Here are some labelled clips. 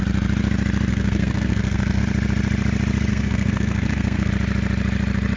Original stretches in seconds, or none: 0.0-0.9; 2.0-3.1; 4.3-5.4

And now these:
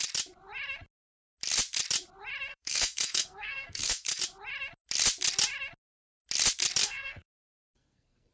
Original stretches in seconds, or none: 0.0-2.5; 4.2-6.8

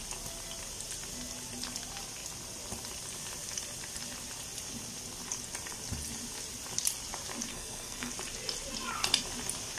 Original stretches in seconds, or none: 0.0-7.5; 8.1-9.8

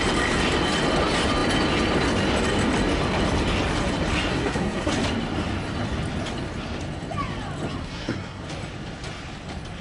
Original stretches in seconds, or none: 0.0-4.3; 4.9-7.8; 8.4-9.8

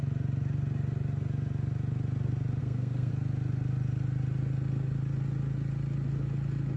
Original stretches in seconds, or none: 0.0-2.6; 3.1-6.8

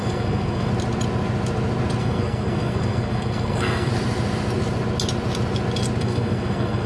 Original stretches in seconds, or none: 0.7-2.0; 3.9-6.0

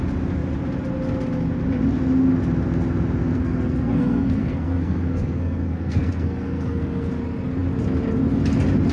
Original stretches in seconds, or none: 0.0-3.2; 7.1-8.9